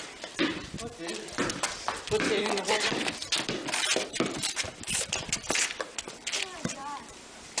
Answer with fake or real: fake